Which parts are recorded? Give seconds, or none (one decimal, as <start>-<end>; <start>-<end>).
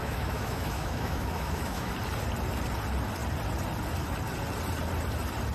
1.9-5.5